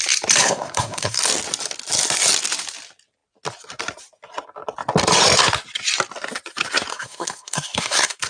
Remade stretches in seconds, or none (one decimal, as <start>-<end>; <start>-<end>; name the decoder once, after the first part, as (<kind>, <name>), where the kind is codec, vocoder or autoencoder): 0.4-1.2 (codec, SNAC); 6.9-8.3